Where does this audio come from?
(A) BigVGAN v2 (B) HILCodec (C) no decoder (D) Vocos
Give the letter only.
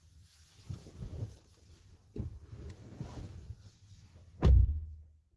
C